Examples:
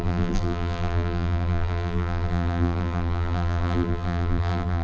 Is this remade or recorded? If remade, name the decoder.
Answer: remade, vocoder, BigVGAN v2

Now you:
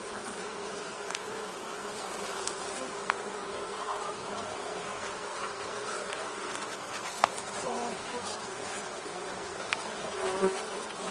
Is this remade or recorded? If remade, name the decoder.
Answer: remade, codec, SNAC